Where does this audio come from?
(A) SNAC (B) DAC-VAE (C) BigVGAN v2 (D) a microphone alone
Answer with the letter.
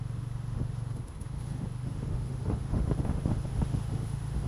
B